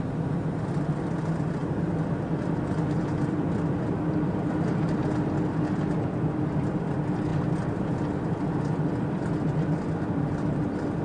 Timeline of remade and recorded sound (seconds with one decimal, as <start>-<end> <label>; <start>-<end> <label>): 0.0-11.0 remade